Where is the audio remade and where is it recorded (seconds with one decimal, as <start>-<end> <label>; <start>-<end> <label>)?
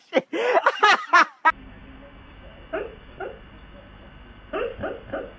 0.0-2.9 recorded; 2.9-3.5 remade; 3.5-5.4 recorded